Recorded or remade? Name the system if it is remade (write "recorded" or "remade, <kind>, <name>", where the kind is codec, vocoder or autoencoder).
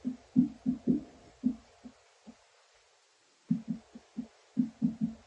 recorded